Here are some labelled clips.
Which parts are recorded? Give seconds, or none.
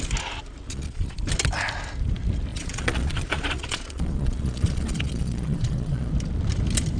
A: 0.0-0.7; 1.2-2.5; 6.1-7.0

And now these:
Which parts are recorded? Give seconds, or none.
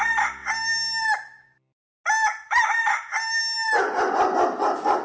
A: 0.0-5.0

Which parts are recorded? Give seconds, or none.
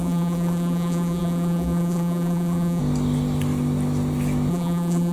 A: 2.8-4.5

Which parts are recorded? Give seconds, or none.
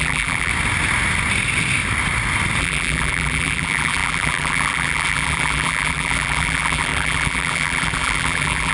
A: 0.5-2.6